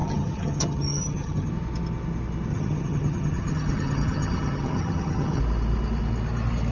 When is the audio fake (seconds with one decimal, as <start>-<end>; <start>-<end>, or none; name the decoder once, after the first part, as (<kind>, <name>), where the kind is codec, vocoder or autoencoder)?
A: 0.0-1.5 (vocoder, HiFi-GAN); 2.5-5.4